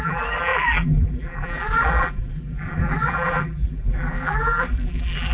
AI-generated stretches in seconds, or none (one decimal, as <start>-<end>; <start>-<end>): 0.0-5.3